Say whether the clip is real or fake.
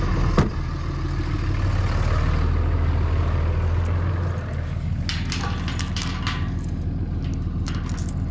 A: real